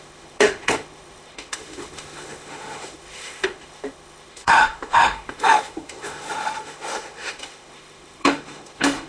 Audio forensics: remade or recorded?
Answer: remade